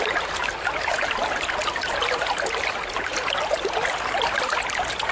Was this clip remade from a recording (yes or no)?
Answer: no